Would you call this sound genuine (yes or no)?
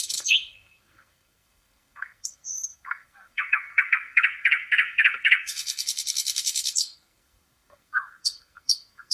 no